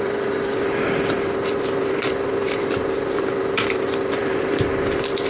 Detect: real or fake fake